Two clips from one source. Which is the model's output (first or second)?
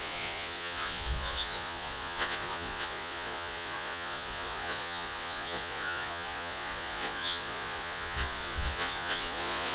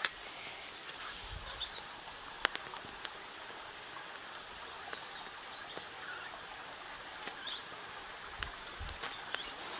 first